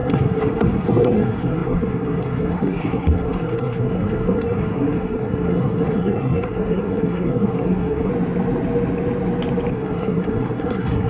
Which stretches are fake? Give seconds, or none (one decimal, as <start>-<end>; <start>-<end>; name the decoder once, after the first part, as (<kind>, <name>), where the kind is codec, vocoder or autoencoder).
0.0-8.1 (codec, SNAC); 9.7-11.1

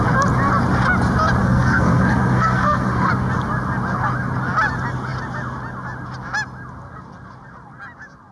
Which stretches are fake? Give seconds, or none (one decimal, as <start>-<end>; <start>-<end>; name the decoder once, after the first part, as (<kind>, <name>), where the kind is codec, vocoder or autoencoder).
1.4-3.1 (codec, SNAC)

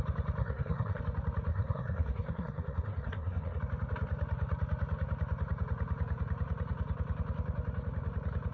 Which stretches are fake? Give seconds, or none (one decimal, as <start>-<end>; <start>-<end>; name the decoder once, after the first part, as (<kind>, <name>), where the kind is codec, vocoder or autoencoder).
0.4-1.0 (codec, SNAC); 1.5-3.6

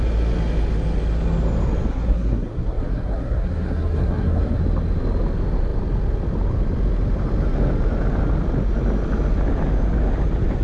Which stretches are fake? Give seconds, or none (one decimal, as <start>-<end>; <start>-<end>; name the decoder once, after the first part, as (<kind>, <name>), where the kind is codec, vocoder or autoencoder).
1.9-4.6 (codec, SNAC)